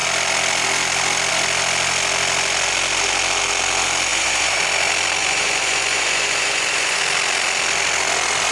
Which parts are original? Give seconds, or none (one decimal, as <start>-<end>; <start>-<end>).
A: 0.0-4.1; 4.6-5.2; 7.0-8.5